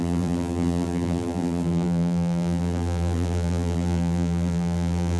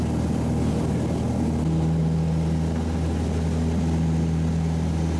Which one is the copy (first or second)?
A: first